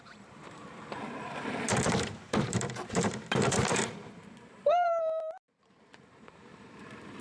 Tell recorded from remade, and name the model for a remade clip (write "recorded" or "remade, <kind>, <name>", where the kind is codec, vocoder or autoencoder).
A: remade, vocoder, BigVGAN v2